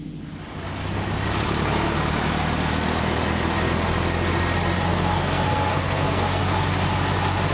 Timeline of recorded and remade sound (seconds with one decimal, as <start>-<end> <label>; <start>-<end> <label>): 0.0-4.9 recorded; 4.9-6.4 remade; 6.4-7.5 recorded